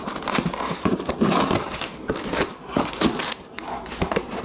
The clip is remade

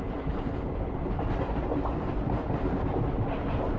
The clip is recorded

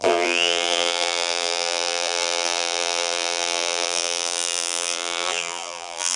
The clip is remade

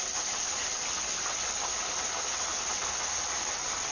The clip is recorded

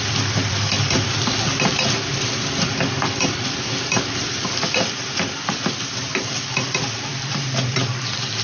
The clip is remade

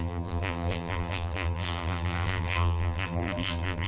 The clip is remade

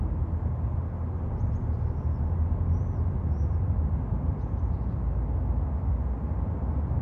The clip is recorded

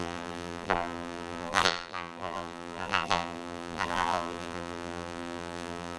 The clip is remade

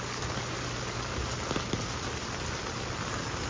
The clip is recorded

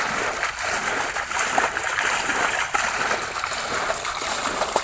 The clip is recorded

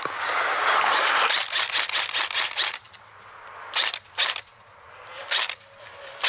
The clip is recorded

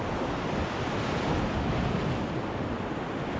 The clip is recorded